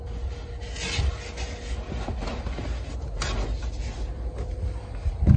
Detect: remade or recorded recorded